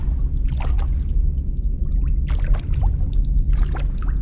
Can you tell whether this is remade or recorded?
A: recorded